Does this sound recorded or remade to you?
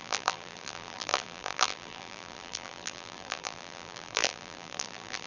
remade